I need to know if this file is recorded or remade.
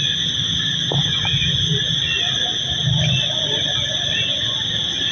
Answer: recorded